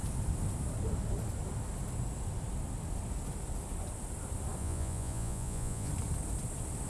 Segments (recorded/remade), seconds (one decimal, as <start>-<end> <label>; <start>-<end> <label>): 0.0-4.6 recorded; 4.6-5.9 remade; 5.9-6.9 recorded